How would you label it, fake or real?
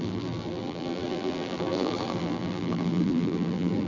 fake